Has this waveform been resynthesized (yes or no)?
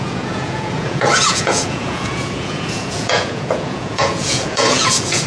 yes